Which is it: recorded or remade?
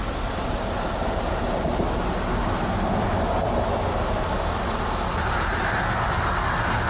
recorded